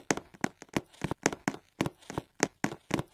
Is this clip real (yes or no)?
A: yes